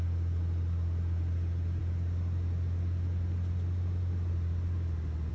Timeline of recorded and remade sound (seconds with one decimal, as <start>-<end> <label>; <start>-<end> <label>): 0.0-5.3 recorded